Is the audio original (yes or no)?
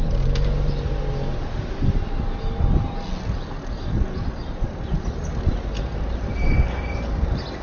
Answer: yes